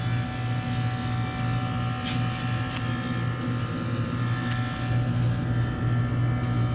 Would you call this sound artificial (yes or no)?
no